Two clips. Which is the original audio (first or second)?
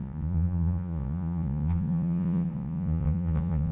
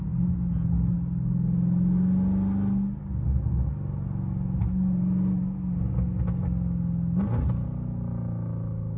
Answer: second